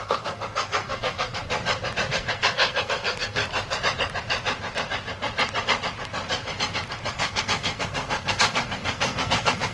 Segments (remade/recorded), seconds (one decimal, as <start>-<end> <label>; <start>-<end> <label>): 0.0-1.4 remade; 1.4-2.1 recorded; 2.1-3.4 remade; 3.4-7.1 recorded; 7.1-9.7 remade